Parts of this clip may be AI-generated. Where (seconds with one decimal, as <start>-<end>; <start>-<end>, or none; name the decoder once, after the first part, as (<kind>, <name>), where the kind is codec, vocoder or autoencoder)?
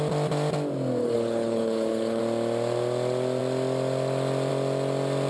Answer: 1.0-2.2 (codec, HILCodec)